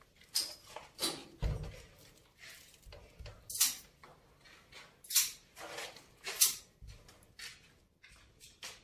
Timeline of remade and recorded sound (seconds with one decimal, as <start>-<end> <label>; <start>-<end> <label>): 0.0-8.8 recorded